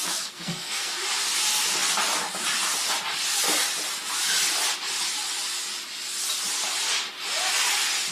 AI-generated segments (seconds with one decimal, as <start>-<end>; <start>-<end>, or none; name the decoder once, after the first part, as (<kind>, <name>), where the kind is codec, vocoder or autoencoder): 0.0-1.0 (codec, SNAC)